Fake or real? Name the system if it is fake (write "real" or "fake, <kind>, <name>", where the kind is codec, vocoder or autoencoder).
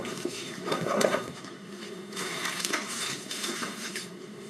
fake, codec, SNAC